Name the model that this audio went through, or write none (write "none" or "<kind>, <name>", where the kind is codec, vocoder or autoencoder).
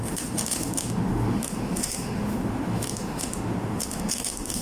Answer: autoencoder, DAC-VAE